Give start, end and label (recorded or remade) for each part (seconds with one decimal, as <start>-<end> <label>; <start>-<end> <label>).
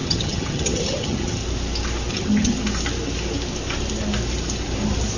0.0-1.4 remade; 1.4-2.1 recorded; 2.1-2.5 remade; 2.5-5.2 recorded